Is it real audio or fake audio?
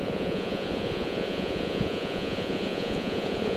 fake